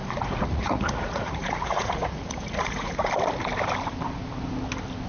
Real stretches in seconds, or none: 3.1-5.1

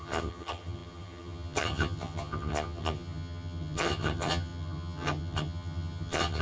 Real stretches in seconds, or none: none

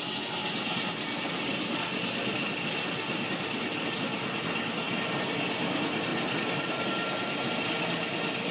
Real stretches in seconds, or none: 0.0-8.5

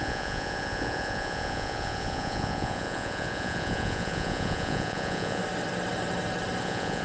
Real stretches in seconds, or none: 5.4-6.6